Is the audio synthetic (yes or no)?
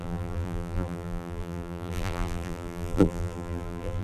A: yes